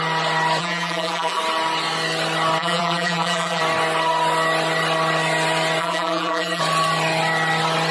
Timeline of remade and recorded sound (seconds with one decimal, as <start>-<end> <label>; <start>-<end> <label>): 0.0-0.6 recorded; 0.6-1.4 remade; 1.4-2.6 recorded; 2.6-3.6 remade; 3.6-5.8 recorded; 5.8-6.6 remade; 6.6-7.9 recorded